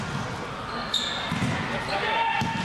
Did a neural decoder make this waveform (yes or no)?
no